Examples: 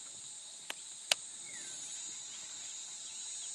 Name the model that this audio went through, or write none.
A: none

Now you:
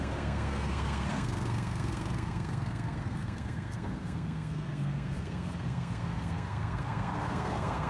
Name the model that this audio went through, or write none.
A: codec, SNAC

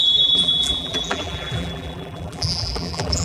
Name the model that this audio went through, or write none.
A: vocoder, BigVGAN v2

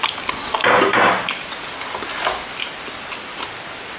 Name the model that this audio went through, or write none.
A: none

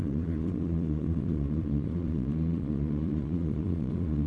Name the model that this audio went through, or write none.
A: vocoder, Vocos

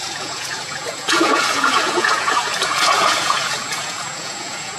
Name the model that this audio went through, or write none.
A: vocoder, Vocos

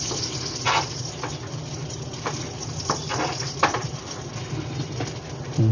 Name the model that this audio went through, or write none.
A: vocoder, BigVGAN v2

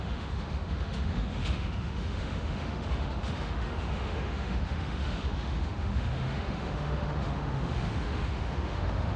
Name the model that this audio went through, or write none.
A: autoencoder, DAC-VAE